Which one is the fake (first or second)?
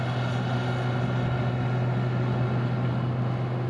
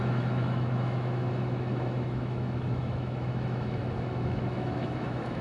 second